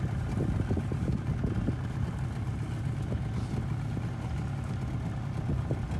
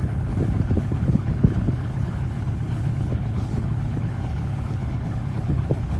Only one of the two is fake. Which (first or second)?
second